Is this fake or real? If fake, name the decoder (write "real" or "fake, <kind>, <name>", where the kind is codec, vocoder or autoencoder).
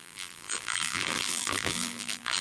fake, vocoder, BigVGAN v2